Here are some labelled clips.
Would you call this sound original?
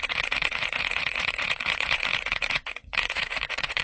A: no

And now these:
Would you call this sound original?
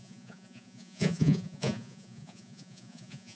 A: no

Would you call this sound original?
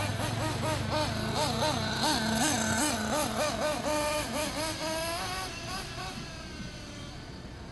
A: yes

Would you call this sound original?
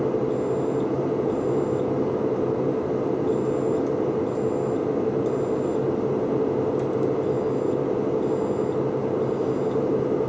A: yes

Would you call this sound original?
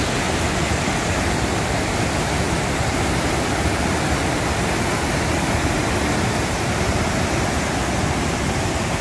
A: yes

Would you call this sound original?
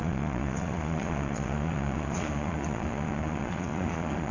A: no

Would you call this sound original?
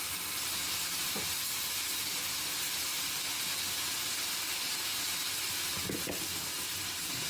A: yes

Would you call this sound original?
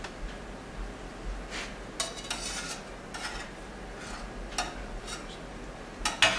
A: yes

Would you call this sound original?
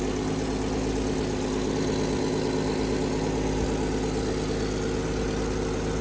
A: yes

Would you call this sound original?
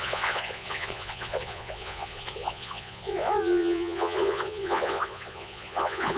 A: no